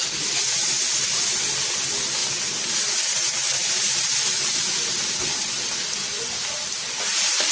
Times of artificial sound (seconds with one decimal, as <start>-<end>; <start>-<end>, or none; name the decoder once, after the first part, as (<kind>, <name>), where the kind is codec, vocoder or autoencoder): none